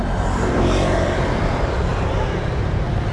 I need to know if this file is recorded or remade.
remade